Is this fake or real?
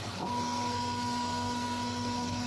fake